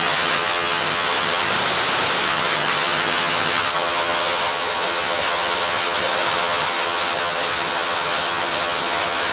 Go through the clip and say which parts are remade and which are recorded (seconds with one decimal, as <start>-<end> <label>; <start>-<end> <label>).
0.0-1.5 remade; 1.5-2.2 recorded; 2.2-9.3 remade